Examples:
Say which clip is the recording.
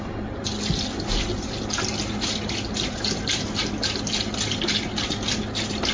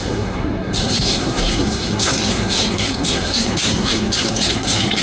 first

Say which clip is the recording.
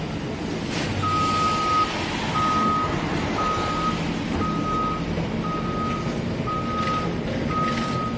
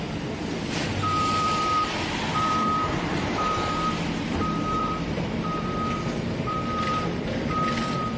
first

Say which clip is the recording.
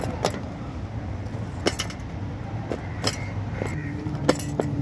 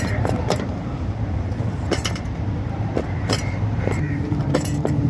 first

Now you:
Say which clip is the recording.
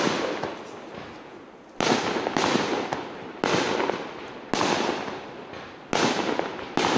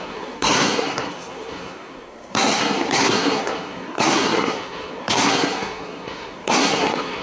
first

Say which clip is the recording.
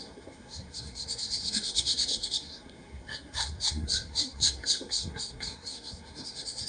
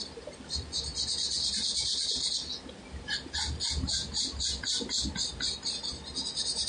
second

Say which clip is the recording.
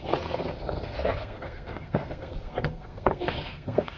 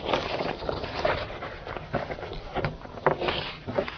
second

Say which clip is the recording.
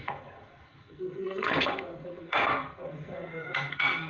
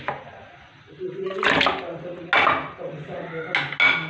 second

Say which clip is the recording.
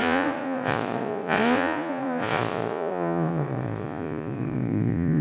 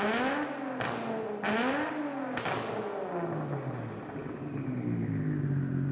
second